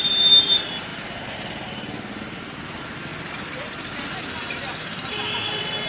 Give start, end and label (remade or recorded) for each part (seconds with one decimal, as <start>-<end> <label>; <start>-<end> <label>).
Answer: 0.0-5.9 recorded